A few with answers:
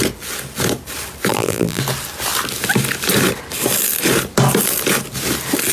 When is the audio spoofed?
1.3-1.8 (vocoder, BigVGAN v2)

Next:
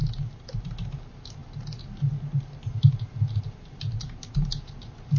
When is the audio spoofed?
none

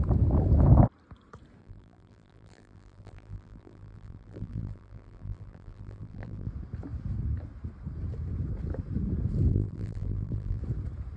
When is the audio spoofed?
1.6-6.5 (vocoder, BigVGAN v2); 9.5-10.6

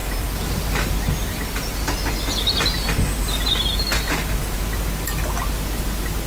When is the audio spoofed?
0.0-0.9 (vocoder, BigVGAN v2); 3.9-4.6

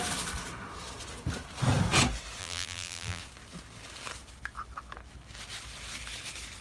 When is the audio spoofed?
2.4-3.2 (vocoder, BigVGAN v2)